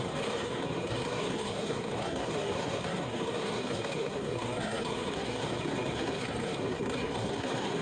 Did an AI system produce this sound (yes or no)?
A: yes